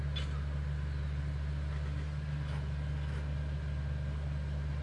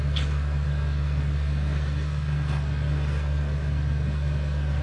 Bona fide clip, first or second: first